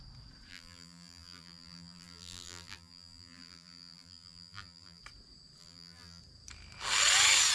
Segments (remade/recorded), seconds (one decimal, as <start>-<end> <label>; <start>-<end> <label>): 0.0-0.5 recorded; 0.5-5.0 remade; 5.0-5.6 recorded; 5.6-6.2 remade; 6.2-7.5 recorded